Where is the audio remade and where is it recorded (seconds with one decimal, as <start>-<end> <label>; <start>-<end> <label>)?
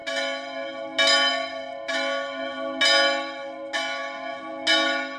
0.0-5.2 recorded